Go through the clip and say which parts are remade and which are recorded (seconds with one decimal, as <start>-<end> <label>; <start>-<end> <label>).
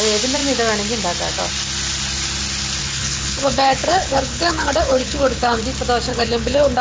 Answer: 0.0-2.8 recorded; 2.8-5.6 remade; 5.6-6.1 recorded; 6.1-6.8 remade